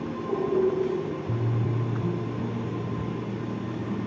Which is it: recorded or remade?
recorded